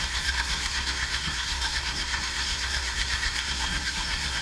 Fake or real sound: fake